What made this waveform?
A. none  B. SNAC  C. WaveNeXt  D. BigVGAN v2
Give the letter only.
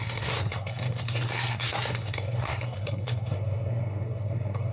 B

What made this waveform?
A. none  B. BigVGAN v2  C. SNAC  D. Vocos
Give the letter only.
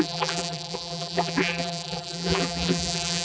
B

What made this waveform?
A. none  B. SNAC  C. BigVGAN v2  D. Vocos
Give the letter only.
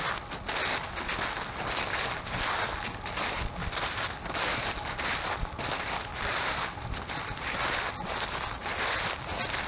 A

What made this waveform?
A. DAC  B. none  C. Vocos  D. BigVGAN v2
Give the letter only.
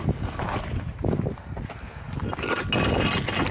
B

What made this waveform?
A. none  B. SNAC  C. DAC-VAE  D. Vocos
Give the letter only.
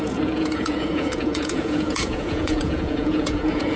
D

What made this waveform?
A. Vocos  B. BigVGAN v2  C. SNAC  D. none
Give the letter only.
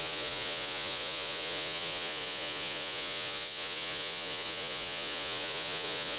A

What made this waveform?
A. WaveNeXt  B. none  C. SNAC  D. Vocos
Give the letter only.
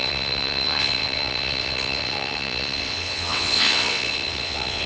A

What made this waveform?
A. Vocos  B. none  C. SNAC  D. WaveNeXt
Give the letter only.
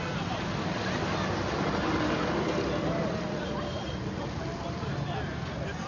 B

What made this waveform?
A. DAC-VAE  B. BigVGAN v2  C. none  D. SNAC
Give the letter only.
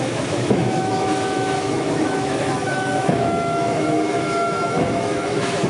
A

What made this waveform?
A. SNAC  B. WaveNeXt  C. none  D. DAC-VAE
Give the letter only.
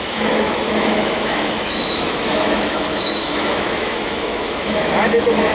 D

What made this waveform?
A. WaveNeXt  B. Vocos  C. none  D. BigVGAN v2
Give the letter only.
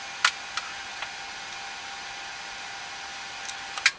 C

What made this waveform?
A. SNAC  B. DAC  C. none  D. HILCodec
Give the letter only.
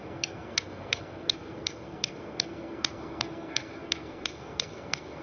A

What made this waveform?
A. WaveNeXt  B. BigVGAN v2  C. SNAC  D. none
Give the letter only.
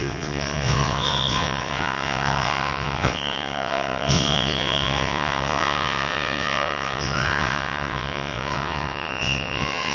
A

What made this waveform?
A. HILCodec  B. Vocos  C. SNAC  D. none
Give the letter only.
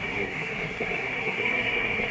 C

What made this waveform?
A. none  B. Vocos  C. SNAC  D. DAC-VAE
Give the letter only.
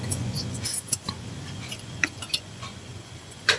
B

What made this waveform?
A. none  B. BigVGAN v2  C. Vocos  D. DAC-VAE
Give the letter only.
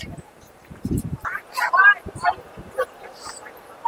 B